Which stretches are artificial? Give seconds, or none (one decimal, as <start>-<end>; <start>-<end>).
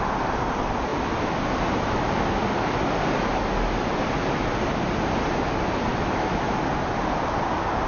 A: 5.9-6.5